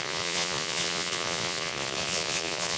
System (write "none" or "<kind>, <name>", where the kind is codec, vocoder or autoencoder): vocoder, Vocos